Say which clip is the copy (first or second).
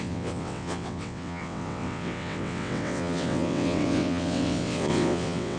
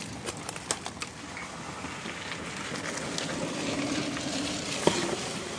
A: first